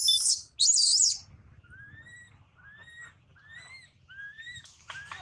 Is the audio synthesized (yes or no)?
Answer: no